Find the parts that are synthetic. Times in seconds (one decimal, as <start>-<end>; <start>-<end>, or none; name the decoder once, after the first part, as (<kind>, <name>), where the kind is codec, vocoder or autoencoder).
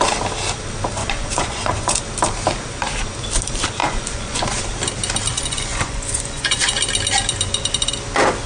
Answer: 1.0-2.0 (vocoder, Vocos); 3.8-4.6; 5.3-6.8